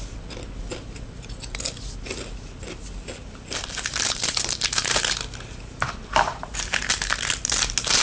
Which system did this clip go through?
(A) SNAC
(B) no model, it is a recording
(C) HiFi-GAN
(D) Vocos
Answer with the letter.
B